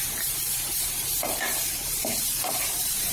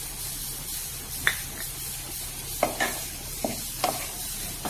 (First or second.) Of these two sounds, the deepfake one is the first